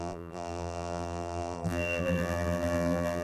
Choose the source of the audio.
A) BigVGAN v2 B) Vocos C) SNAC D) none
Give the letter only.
A